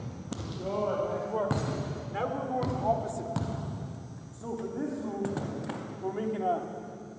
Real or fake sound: real